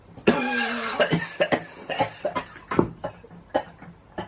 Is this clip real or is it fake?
real